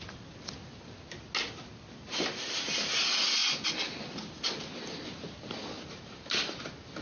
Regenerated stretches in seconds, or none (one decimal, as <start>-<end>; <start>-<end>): none